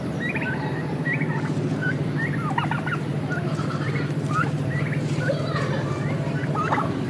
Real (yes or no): no